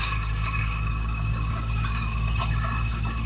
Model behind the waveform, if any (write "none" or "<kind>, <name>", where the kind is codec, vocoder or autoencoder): codec, DAC